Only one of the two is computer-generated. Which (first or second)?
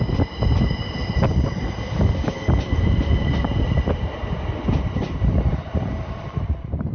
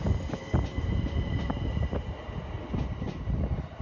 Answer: first